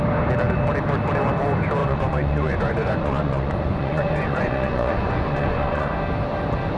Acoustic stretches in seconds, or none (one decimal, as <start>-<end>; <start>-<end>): 0.0-1.8; 5.9-6.8